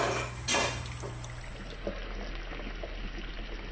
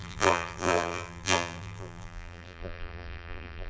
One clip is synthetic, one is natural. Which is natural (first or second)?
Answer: first